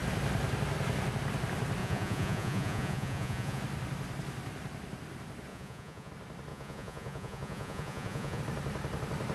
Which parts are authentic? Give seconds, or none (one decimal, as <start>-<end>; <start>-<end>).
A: 0.0-1.8; 3.6-5.5; 6.1-6.5; 8.4-9.3